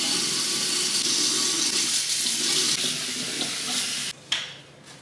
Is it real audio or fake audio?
real